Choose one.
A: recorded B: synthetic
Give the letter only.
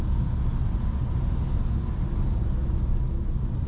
A